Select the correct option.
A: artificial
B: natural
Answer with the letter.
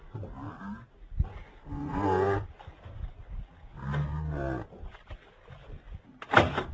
B